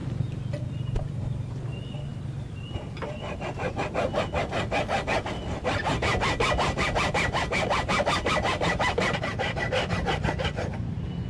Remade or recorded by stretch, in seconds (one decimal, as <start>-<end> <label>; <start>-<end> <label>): 0.0-0.7 remade; 0.7-2.1 recorded; 2.1-3.1 remade; 3.1-5.8 recorded; 5.8-9.9 remade; 9.9-11.3 recorded